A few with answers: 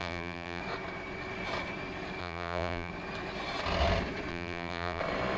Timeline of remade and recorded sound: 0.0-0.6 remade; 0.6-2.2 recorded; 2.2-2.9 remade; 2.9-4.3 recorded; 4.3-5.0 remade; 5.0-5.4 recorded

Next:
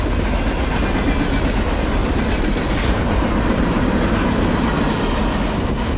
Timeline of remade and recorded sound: 0.0-2.0 recorded; 2.0-3.8 remade; 3.8-6.0 recorded

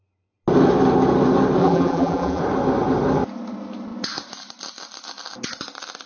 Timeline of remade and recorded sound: 0.0-1.6 recorded; 1.6-2.4 remade; 2.4-6.1 recorded

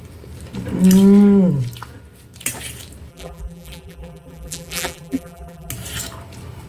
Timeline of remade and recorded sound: 0.0-3.1 recorded; 3.1-5.7 remade; 5.7-6.7 recorded

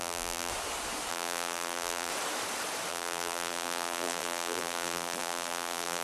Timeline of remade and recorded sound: 0.0-0.5 remade; 0.5-1.1 recorded; 1.1-2.1 remade; 2.1-2.9 recorded; 2.9-6.0 remade

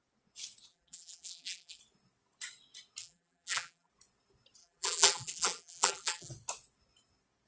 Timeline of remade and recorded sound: 0.0-0.7 recorded; 0.7-1.8 remade; 1.8-3.0 recorded; 3.0-3.9 remade; 3.9-4.6 recorded; 4.6-6.3 remade; 6.3-7.5 recorded